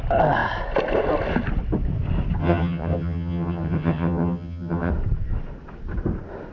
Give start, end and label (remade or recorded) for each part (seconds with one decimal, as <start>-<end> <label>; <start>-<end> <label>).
0.0-2.4 recorded; 2.4-4.9 remade; 4.9-6.5 recorded